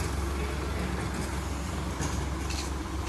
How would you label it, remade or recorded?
recorded